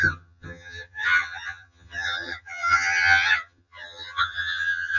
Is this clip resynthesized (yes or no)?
yes